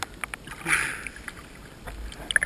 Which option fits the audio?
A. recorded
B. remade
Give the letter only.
A